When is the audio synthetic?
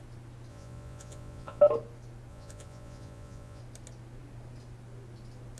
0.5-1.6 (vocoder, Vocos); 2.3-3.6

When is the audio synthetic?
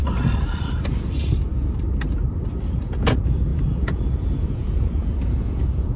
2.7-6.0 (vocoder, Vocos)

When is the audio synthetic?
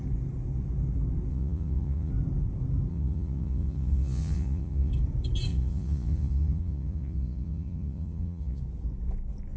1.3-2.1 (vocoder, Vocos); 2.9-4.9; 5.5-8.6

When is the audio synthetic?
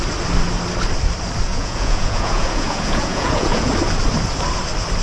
1.5-3.7 (vocoder, Vocos)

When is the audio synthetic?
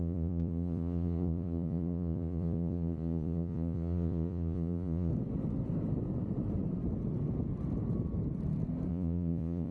0.0-5.1 (vocoder, Vocos); 8.9-9.7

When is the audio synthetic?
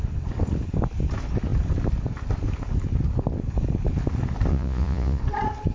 4.5-5.2 (vocoder, Vocos)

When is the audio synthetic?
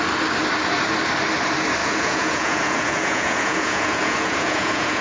1.8-5.0 (vocoder, Vocos)